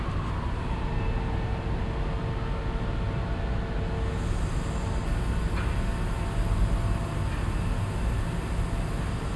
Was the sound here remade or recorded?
recorded